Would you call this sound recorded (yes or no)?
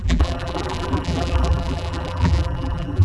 no